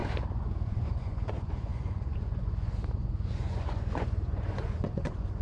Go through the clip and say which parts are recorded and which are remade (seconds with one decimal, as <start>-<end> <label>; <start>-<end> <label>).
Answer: 0.0-5.4 remade